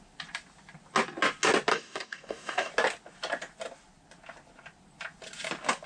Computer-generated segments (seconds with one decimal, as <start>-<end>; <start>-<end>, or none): 1.7-2.7